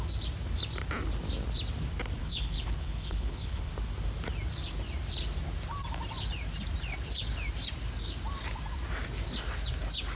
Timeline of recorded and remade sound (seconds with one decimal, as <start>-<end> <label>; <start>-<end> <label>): 0.0-2.2 recorded; 2.2-3.7 remade; 3.7-10.2 recorded